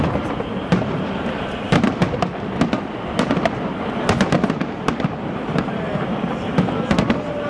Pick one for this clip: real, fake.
real